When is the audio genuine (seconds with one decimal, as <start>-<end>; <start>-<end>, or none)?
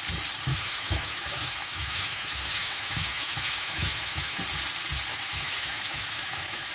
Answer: 0.0-0.5; 4.4-5.1